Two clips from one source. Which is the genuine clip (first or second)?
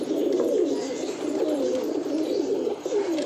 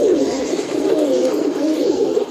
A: first